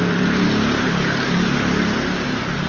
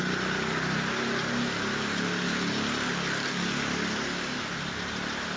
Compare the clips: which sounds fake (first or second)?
first